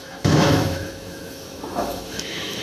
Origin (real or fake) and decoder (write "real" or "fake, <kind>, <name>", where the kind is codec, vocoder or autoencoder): fake, autoencoder, DAC-VAE